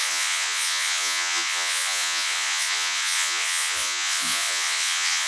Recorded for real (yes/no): no